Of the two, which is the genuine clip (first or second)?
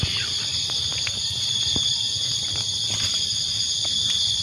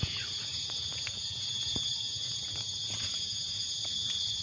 first